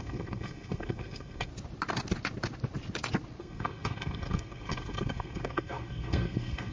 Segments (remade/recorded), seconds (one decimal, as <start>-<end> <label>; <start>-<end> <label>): 0.0-1.5 remade; 1.5-3.4 recorded; 3.4-6.7 remade